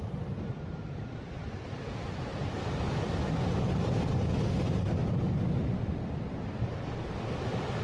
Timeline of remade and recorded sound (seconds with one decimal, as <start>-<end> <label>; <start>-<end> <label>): 0.0-2.3 remade; 2.3-3.7 recorded; 3.7-5.0 remade; 5.0-6.4 recorded; 6.4-7.8 remade